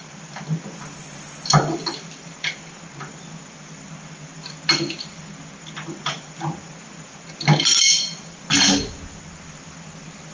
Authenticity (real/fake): real